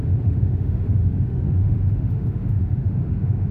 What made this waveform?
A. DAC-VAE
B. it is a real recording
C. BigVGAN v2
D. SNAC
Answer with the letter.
A